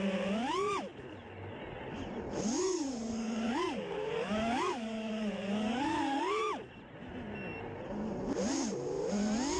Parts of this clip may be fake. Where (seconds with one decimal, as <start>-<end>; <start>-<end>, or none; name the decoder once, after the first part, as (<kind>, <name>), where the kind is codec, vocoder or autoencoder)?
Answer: 2.6-6.4 (codec, DAC)